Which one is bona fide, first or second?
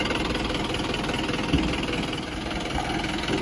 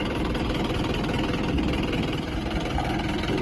first